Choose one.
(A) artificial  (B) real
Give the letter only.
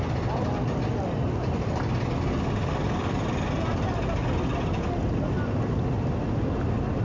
B